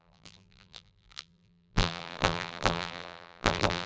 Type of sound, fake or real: fake